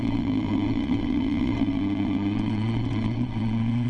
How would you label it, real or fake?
fake